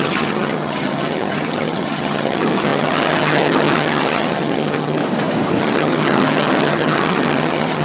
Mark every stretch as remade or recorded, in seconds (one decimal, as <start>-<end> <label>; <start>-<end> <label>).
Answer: 0.0-5.0 remade; 5.0-5.6 recorded; 5.6-7.8 remade